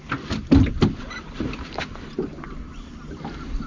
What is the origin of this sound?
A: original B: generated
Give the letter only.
A